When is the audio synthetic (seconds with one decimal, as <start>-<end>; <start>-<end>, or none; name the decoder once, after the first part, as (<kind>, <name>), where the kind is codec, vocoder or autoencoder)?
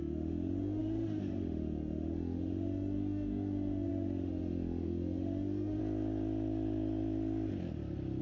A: 0.0-5.8 (autoencoder, DAC-VAE)